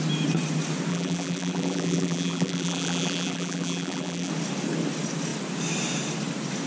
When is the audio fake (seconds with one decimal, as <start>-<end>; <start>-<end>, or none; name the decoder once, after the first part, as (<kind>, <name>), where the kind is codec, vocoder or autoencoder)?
0.9-4.3 (vocoder, BigVGAN v2)